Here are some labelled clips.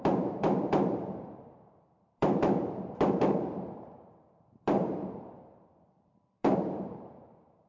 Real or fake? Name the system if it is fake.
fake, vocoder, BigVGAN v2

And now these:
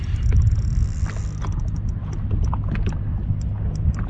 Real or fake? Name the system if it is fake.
real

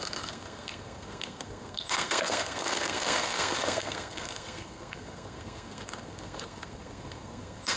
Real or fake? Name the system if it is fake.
fake, codec, SNAC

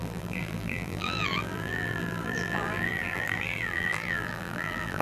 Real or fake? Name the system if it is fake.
fake, vocoder, BigVGAN v2